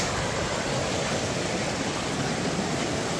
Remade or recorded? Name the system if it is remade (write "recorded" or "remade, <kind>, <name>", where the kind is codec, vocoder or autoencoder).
recorded